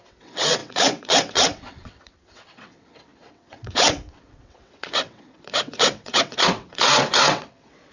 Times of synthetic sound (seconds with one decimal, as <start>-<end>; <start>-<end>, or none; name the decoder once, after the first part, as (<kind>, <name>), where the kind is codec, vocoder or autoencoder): 0.0-7.9 (vocoder, WaveNeXt)